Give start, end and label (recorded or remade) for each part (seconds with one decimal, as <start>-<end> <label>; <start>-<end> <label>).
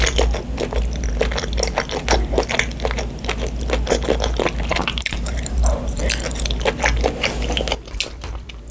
0.0-4.7 recorded; 4.7-6.0 remade; 6.0-8.7 recorded